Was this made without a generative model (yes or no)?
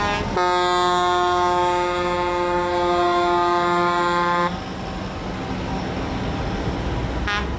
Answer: yes